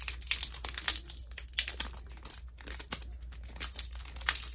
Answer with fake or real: real